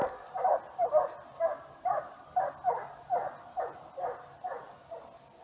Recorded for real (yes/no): yes